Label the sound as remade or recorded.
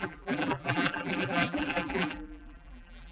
remade